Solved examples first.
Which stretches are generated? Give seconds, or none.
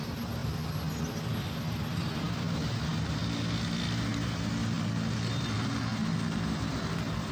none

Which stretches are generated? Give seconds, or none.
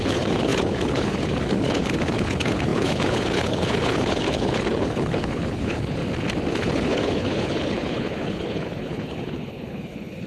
0.0-6.0 (codec, HILCodec); 6.5-10.3